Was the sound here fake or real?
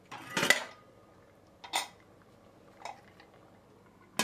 real